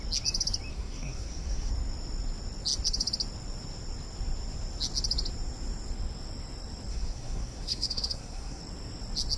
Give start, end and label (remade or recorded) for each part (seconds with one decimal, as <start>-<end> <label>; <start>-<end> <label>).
0.0-0.7 recorded; 0.7-1.7 remade; 1.7-6.9 recorded; 6.9-8.6 remade; 8.6-9.4 recorded